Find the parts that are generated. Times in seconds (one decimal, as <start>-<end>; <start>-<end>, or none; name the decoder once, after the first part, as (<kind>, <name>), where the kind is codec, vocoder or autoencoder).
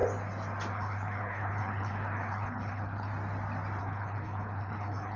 0.7-3.1 (codec, HILCodec); 3.8-5.2